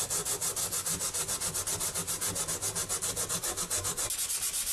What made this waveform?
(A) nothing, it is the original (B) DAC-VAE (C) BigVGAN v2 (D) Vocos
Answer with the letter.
A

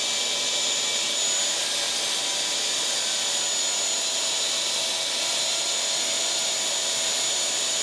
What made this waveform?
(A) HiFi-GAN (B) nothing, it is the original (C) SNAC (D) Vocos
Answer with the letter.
B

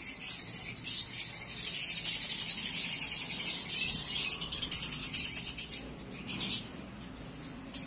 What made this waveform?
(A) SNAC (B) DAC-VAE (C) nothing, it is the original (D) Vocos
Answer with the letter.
C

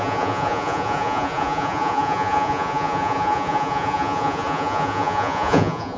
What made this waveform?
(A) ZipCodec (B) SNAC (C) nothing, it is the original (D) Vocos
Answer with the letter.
D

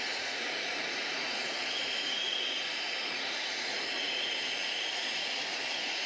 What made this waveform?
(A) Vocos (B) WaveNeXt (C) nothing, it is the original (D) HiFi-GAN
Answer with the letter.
A